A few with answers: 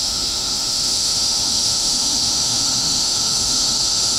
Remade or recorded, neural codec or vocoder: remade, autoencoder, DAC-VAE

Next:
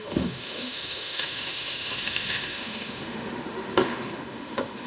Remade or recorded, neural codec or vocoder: remade, autoencoder, DAC-VAE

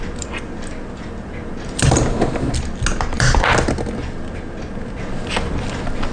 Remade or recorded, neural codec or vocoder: recorded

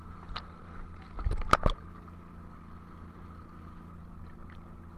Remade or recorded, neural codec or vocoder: recorded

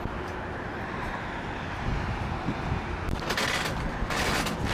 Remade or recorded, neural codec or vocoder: recorded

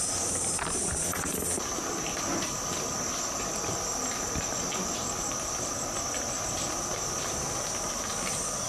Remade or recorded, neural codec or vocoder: recorded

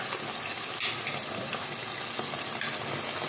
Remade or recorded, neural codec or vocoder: recorded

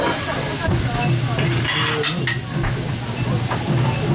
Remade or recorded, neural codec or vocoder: recorded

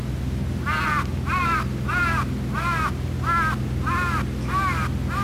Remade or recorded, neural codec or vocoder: recorded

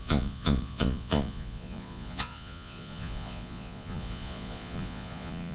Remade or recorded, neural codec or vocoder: remade, vocoder, Vocos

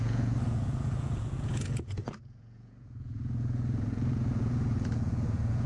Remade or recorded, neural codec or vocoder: remade, vocoder, Vocos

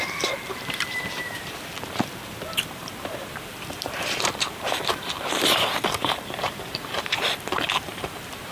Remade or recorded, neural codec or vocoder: remade, vocoder, BigVGAN v2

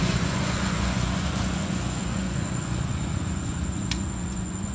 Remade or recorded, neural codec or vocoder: remade, vocoder, Vocos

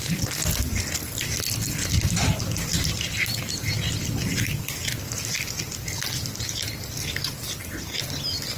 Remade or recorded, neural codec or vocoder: recorded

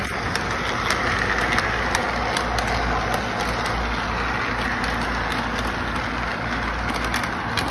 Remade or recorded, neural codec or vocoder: recorded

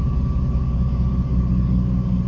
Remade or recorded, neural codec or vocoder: recorded